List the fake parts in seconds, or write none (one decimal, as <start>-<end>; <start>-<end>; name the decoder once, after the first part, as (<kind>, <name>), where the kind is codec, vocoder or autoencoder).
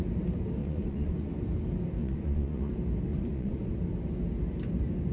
0.6-1.3 (vocoder, Vocos); 2.0-2.7; 3.1-3.7